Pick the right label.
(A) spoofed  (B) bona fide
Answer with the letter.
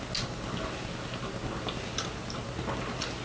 B